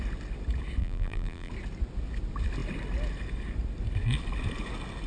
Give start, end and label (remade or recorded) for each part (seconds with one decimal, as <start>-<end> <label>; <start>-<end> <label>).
0.0-0.8 recorded; 0.8-1.5 remade; 1.5-5.1 recorded